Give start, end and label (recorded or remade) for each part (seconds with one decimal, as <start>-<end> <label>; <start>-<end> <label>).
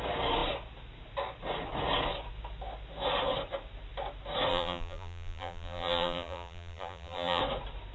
0.0-4.5 recorded; 4.5-7.4 remade; 7.4-7.9 recorded